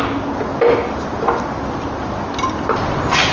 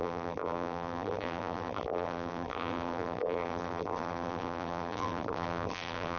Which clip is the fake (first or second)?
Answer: second